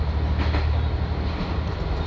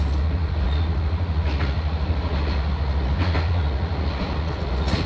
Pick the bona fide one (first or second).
first